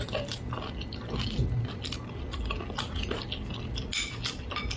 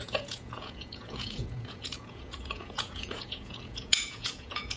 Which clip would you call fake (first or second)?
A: second